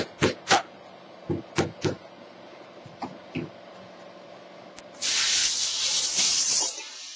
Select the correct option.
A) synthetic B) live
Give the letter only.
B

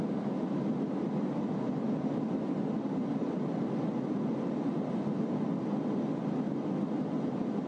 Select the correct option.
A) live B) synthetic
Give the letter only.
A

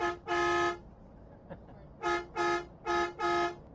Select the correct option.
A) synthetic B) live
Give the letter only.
B